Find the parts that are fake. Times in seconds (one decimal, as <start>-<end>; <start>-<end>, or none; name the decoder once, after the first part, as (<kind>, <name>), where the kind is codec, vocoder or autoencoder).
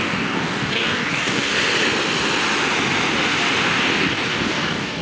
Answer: 0.0-1.5 (codec, DAC); 4.0-5.0